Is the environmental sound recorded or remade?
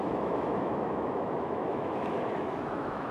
remade